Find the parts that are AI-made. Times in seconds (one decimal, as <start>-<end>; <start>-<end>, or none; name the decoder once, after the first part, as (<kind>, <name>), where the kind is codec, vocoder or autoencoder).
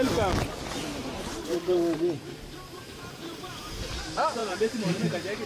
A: 1.0-3.9 (vocoder, BigVGAN v2); 4.4-5.0